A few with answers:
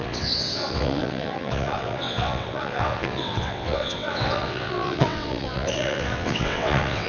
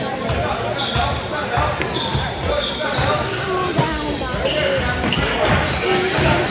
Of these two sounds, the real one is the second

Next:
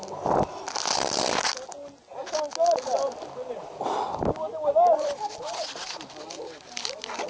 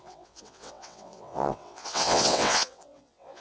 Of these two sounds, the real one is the first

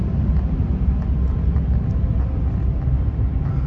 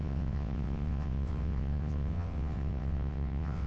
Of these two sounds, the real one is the first